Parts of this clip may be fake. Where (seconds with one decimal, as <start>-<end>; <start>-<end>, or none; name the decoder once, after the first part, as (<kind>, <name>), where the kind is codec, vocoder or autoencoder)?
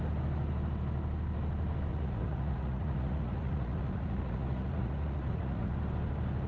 1.9-5.7 (vocoder, Vocos)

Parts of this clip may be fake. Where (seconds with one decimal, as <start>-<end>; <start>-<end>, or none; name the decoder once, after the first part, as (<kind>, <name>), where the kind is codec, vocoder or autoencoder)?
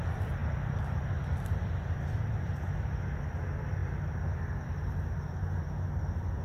0.4-1.7 (vocoder, BigVGAN v2); 3.8-4.5